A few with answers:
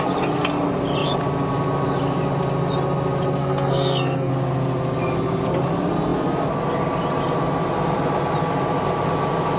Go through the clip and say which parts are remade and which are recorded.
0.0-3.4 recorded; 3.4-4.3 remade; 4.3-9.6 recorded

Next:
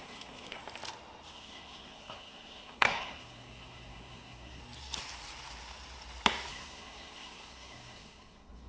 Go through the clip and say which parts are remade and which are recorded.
0.0-0.6 remade; 0.6-1.3 recorded; 1.3-4.6 remade; 4.6-6.5 recorded; 6.5-8.7 remade

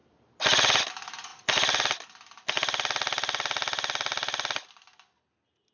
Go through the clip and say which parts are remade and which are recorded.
0.0-5.7 recorded

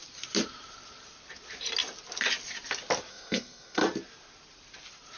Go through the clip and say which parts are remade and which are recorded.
0.0-3.1 recorded; 3.1-3.8 remade; 3.8-5.2 recorded